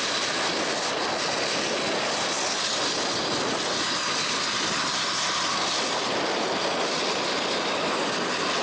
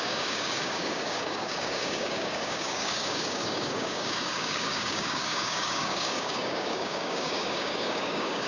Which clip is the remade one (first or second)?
second